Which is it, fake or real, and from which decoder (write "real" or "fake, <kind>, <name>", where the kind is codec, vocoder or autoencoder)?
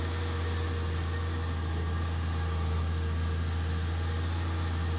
real